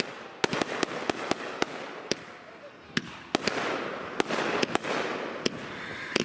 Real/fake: real